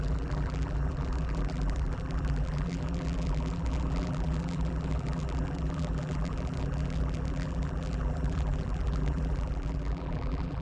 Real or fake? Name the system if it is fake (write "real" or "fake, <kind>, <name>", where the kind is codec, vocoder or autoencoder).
fake, vocoder, BigVGAN v2